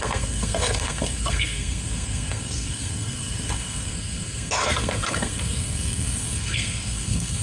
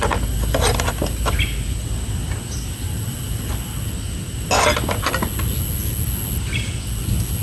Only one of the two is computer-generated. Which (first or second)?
first